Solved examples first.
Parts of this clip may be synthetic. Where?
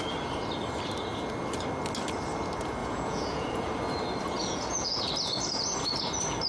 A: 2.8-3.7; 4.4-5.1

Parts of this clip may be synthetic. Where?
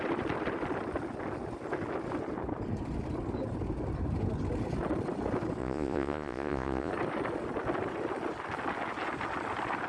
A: 5.6-6.9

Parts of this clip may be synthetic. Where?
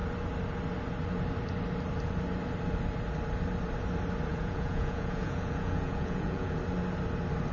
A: 4.3-6.6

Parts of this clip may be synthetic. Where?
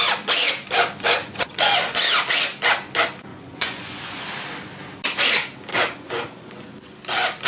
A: 1.2-2.0; 3.3-4.3; 5.7-7.0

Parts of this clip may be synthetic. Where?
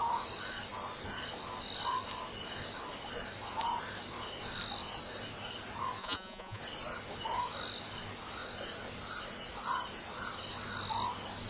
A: 6.0-6.6